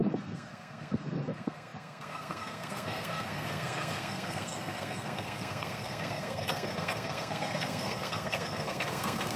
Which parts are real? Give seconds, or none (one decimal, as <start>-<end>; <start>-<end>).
none